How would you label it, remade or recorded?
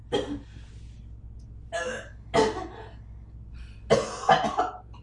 recorded